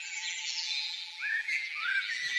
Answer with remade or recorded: remade